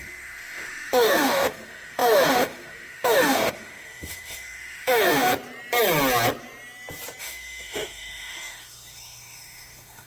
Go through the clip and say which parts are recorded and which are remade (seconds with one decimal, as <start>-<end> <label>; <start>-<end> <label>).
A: 0.0-5.3 remade; 5.3-7.2 recorded; 7.2-10.1 remade